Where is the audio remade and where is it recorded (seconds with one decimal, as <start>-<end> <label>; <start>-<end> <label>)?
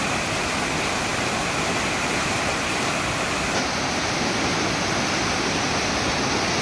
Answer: 0.0-6.6 recorded